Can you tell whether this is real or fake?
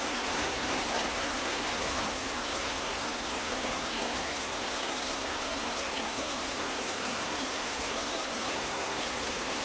fake